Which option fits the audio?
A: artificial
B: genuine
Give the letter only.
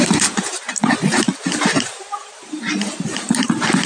A